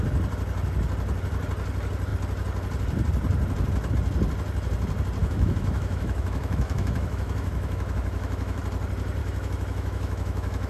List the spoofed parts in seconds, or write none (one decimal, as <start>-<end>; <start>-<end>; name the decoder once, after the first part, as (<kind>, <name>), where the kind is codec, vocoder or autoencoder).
5.2-8.6 (autoencoder, DAC-VAE); 9.2-10.7

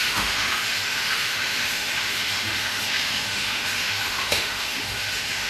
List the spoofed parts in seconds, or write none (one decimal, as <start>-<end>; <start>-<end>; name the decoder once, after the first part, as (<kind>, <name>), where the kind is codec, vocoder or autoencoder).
0.0-5.5 (autoencoder, DAC-VAE)

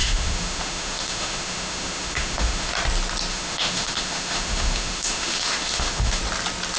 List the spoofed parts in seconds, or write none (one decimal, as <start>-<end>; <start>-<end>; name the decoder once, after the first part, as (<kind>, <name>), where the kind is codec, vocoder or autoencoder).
0.0-2.7 (autoencoder, DAC-VAE); 3.3-6.2

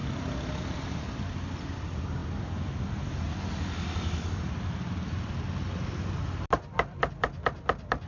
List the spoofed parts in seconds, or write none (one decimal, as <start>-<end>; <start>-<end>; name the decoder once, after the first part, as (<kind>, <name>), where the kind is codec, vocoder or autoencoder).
none

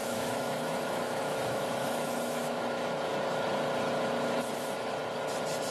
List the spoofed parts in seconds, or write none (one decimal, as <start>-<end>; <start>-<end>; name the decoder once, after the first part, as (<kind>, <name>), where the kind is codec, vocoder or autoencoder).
0.0-3.1 (autoencoder, DAC-VAE); 4.5-5.0

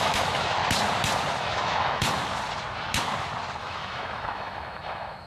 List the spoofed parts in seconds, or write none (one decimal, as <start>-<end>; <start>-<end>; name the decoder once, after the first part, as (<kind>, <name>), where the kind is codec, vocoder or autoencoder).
0.0-0.6 (autoencoder, DAC-VAE); 1.3-2.0; 3.6-5.3

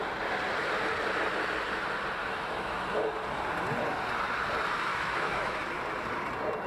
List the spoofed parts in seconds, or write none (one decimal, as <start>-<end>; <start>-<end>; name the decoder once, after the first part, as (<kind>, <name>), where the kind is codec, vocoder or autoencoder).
2.2-2.8 (autoencoder, DAC-VAE); 4.9-5.5

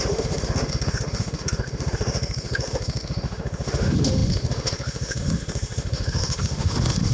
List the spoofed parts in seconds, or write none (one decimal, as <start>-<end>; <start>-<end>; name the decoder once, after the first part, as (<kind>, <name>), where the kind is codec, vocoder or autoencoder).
0.0-7.1 (autoencoder, DAC-VAE)